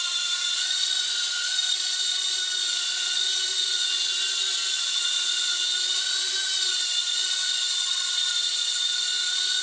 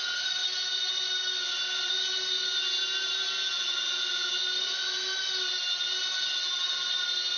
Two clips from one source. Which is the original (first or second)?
second